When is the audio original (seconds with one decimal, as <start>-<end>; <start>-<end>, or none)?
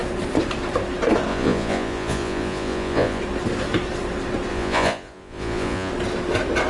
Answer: 0.0-1.3; 3.2-4.5; 5.9-6.7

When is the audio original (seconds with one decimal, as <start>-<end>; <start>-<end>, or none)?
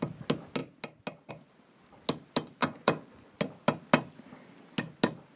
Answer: 0.0-2.6; 3.3-5.4